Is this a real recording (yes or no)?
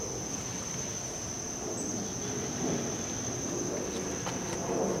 yes